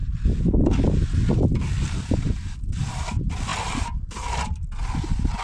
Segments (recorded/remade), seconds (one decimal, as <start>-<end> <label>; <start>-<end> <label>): 0.0-5.4 recorded